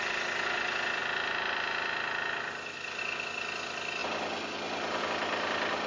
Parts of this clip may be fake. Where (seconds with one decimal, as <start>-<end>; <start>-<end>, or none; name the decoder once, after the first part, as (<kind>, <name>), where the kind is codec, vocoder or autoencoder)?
none